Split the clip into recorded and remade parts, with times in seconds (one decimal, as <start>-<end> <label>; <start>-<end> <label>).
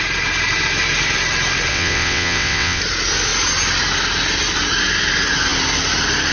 0.0-1.7 recorded; 1.7-2.8 remade; 2.8-6.3 recorded